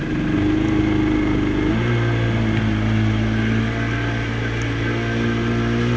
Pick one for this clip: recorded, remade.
recorded